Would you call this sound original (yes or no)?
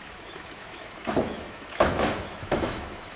no